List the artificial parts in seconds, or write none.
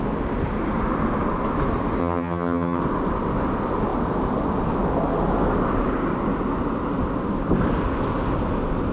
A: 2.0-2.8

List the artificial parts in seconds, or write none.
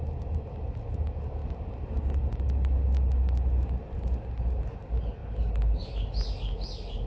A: none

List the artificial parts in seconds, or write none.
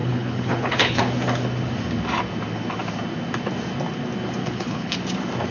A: 0.0-1.0; 4.4-5.0